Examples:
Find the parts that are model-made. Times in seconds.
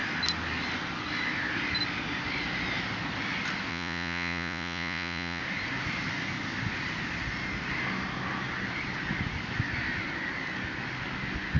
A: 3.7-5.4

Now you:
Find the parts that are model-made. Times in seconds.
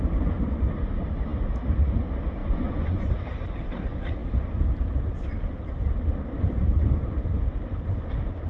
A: 2.4-3.1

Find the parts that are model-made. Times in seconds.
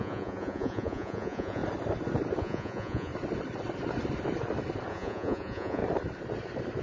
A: 0.0-1.6; 2.4-3.1; 4.9-5.8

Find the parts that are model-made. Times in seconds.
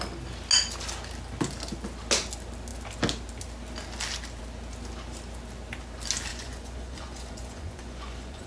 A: 6.3-8.5